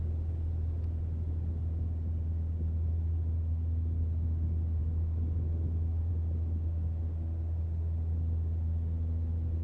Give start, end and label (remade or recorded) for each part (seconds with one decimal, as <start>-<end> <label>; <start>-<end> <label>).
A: 0.0-9.6 recorded